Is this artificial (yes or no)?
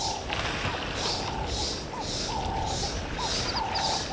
no